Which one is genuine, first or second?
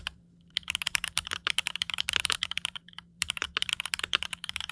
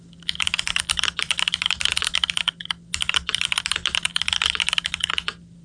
second